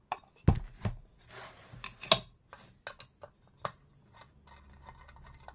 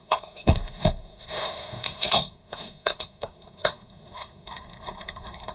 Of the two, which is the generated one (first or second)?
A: second